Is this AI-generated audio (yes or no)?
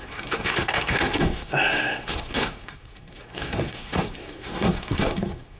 yes